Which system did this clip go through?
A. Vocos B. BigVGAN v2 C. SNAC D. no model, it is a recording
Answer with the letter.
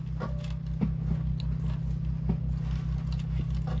D